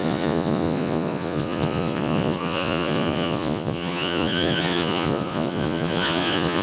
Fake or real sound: fake